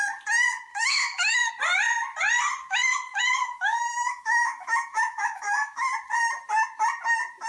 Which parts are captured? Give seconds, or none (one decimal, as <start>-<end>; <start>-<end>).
0.0-0.7; 1.5-2.6; 5.9-7.5